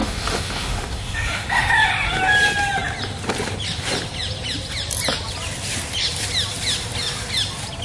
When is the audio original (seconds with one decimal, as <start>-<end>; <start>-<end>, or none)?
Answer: 1.7-7.8